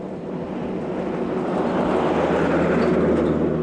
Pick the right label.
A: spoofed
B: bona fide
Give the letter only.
B